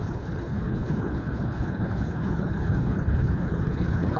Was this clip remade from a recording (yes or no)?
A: yes